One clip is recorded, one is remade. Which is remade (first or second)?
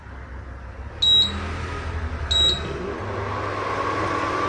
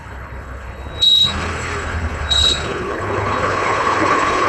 second